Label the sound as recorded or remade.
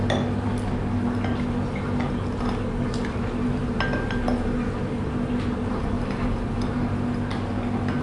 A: recorded